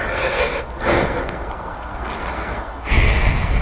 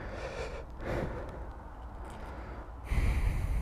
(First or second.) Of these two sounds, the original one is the second